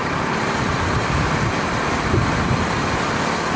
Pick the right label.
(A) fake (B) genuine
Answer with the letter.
B